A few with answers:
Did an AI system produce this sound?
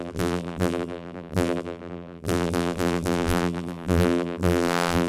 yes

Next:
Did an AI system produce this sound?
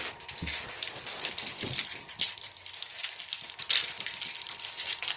no